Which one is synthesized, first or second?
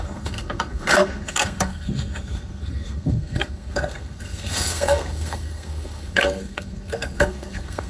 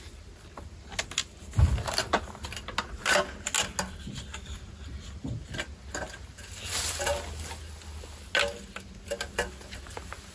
first